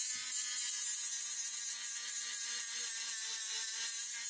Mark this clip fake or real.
real